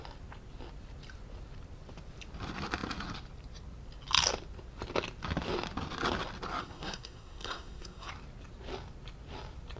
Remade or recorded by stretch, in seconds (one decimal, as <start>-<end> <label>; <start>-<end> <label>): 0.0-6.6 recorded; 6.6-8.1 remade; 8.1-9.8 recorded